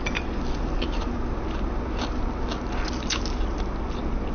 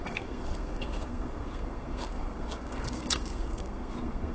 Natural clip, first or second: first